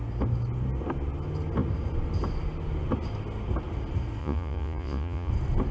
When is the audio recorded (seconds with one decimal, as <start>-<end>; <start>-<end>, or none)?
0.0-4.2; 5.3-5.7